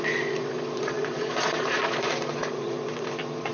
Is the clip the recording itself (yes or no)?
no